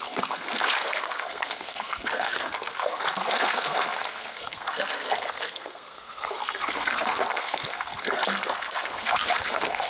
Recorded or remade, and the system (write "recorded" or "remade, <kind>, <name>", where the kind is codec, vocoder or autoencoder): remade, codec, SNAC